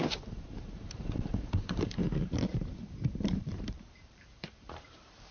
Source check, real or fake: fake